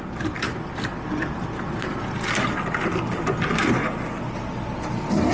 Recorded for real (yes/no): yes